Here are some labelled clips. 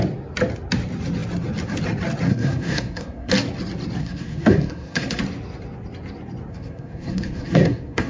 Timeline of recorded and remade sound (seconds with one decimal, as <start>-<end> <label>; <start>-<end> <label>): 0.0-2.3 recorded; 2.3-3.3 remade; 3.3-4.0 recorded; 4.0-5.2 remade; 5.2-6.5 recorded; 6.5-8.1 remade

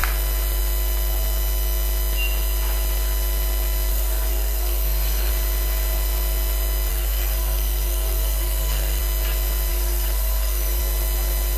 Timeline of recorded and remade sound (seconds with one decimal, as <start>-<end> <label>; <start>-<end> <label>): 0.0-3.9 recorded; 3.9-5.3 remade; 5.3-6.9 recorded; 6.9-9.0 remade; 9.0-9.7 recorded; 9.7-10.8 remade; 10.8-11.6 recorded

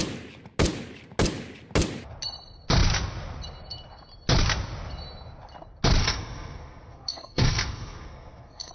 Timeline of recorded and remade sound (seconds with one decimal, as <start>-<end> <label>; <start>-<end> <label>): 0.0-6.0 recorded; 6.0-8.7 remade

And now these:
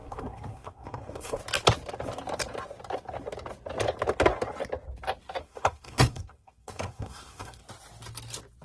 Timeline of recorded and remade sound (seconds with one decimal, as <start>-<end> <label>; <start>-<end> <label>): 0.0-1.4 remade; 1.4-5.4 recorded; 5.4-7.6 remade; 7.6-8.6 recorded

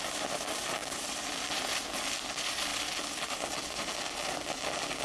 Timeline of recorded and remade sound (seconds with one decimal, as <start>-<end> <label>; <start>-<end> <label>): 0.0-5.0 recorded

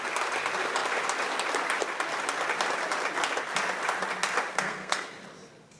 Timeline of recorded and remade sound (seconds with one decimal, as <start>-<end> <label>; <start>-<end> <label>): 0.0-4.5 recorded; 4.5-5.1 remade; 5.1-5.8 recorded